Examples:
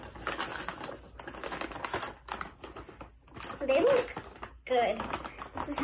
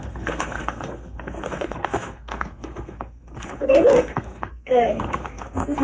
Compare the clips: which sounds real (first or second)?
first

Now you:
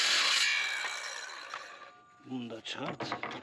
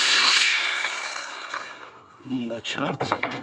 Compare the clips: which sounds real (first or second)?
first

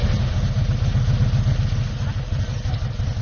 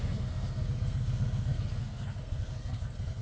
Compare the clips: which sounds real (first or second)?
first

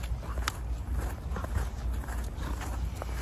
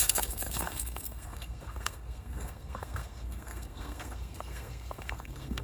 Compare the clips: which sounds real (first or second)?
first